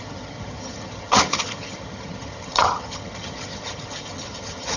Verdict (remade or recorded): remade